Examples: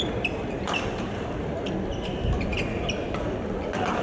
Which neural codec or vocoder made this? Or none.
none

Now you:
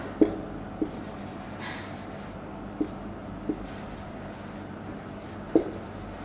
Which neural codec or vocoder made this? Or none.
none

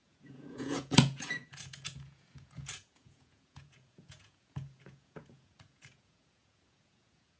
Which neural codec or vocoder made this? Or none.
vocoder, Vocos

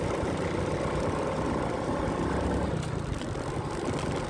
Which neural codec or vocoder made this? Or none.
none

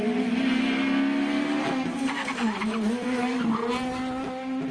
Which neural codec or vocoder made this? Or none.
none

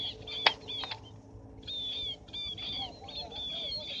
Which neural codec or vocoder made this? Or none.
none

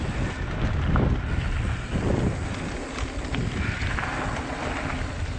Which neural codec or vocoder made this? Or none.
none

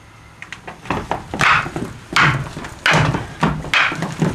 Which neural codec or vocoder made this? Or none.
none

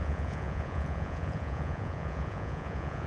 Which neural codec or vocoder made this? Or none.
vocoder, Vocos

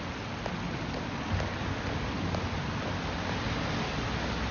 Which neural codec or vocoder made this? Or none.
none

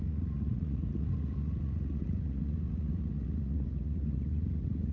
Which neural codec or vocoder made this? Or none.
vocoder, Vocos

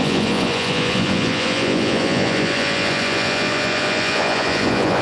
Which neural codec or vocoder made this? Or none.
vocoder, Vocos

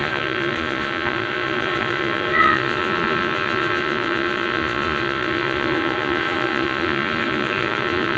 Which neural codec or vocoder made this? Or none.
vocoder, Vocos